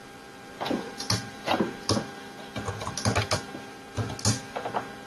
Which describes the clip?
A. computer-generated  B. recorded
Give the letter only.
B